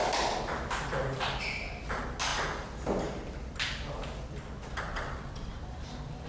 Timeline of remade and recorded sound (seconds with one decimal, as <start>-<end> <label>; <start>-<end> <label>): 0.0-4.9 recorded; 4.9-5.6 remade; 5.6-6.3 recorded